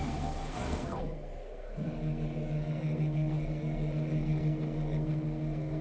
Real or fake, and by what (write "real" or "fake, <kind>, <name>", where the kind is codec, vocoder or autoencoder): fake, codec, SNAC